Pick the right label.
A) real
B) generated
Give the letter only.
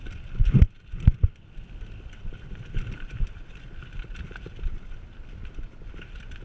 A